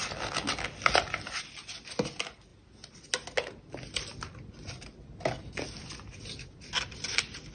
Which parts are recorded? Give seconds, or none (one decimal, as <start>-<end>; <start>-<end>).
0.0-7.5